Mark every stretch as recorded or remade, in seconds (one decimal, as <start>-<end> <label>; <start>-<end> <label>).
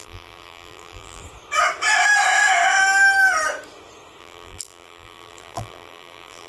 0.0-1.2 remade; 1.2-4.2 recorded; 4.2-6.5 remade